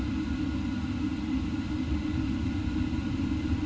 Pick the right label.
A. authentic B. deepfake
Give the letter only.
A